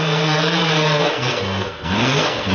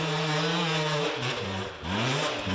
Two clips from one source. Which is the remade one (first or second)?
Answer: first